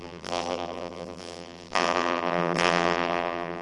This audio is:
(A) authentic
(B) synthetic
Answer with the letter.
B